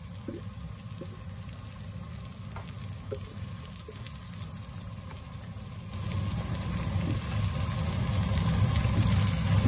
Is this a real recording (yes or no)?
yes